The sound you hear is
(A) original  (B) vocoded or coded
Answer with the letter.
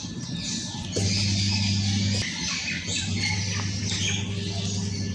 A